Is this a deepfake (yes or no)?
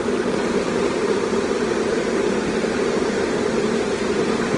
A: no